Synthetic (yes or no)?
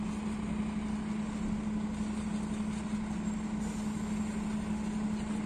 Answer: no